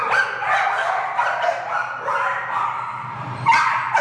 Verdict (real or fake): real